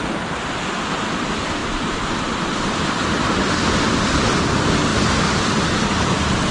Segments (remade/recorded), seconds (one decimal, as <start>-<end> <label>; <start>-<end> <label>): 0.0-1.6 recorded; 1.6-2.8 remade; 2.8-6.5 recorded